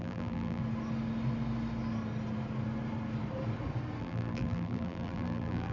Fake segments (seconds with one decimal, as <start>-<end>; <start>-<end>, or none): 0.0-0.6; 4.0-5.7